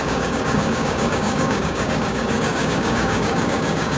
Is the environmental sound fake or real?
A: fake